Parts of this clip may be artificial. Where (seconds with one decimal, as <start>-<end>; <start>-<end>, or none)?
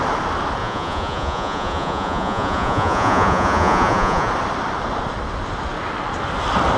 0.6-4.3